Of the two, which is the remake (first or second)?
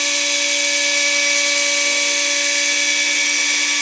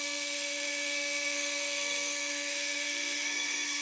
second